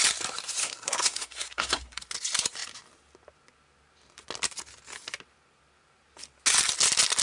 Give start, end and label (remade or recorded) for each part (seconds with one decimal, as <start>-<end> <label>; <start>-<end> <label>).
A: 0.0-0.6 recorded; 0.6-2.0 remade; 2.0-7.2 recorded

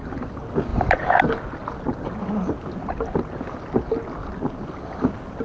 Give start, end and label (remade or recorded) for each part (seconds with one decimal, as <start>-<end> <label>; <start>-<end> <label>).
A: 0.0-5.4 recorded

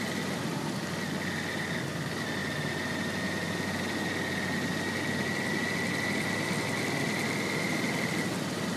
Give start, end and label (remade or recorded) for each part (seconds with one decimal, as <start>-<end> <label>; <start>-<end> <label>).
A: 0.0-8.8 recorded

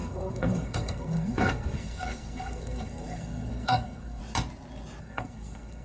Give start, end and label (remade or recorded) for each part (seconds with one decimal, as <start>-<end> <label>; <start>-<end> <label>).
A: 0.0-4.2 remade; 4.2-5.0 recorded; 5.0-5.8 remade

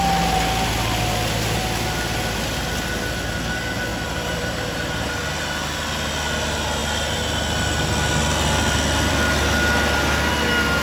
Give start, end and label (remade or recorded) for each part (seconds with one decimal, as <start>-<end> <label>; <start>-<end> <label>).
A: 0.0-3.9 recorded; 3.9-5.1 remade; 5.1-10.8 recorded